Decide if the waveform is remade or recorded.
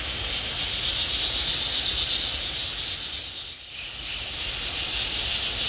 recorded